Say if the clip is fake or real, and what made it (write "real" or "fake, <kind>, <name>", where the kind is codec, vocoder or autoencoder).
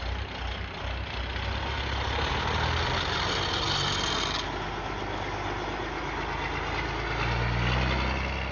real